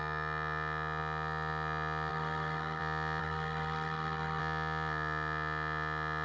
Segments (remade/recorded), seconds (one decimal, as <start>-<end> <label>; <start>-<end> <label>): 0.0-2.1 recorded; 2.1-2.8 remade; 2.8-3.2 recorded; 3.2-4.4 remade; 4.4-6.2 recorded